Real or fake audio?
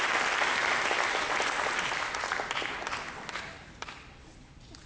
real